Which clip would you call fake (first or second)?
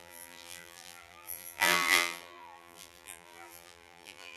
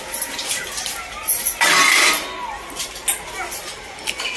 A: first